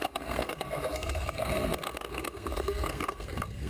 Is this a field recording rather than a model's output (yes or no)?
no